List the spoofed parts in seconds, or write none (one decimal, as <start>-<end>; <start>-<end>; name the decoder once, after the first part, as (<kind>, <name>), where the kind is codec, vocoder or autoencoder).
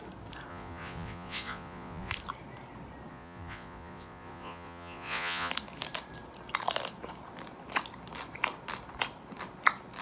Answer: 0.5-2.1 (vocoder, Vocos); 3.1-5.5